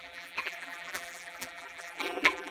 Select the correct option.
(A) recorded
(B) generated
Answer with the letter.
B